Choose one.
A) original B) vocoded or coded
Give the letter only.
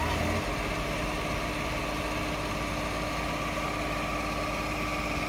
A